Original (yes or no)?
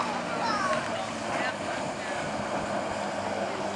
yes